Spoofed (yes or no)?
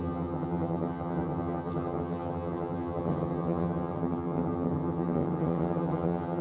yes